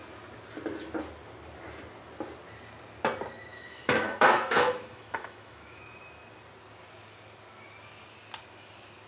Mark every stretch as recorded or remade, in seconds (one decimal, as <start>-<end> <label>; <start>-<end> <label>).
0.0-3.5 recorded; 3.5-5.8 remade; 5.8-9.1 recorded